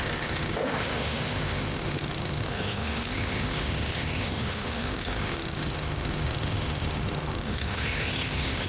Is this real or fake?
fake